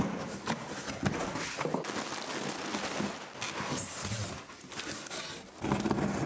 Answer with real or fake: real